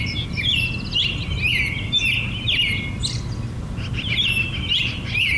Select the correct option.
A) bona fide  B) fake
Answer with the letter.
A